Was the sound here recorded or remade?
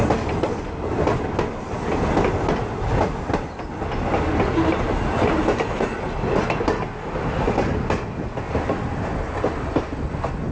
recorded